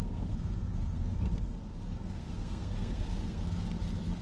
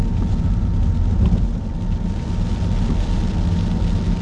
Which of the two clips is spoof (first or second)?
first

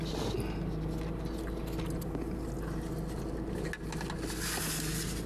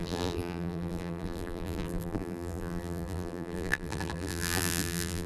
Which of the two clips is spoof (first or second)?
second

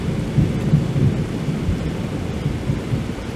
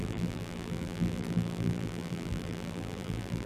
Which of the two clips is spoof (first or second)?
second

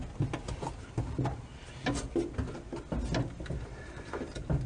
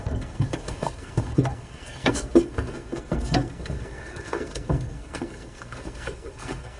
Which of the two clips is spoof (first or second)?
second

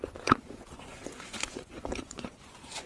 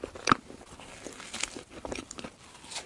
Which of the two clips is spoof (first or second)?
first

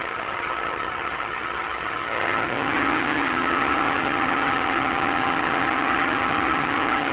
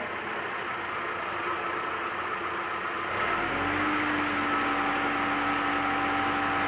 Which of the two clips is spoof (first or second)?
first